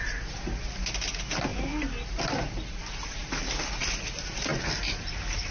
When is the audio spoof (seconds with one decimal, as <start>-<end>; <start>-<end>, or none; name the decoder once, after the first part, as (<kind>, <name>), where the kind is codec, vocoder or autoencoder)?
none